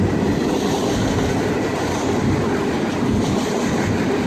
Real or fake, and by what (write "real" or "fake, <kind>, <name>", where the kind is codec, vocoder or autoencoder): real